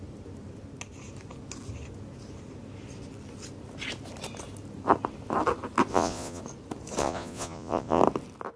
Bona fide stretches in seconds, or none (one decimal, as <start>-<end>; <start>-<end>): 0.0-5.9; 6.4-7.0; 8.0-8.6